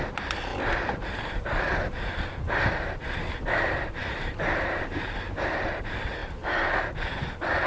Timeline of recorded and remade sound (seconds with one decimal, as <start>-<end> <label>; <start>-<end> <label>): 0.0-4.0 recorded; 4.0-5.5 remade; 5.5-7.7 recorded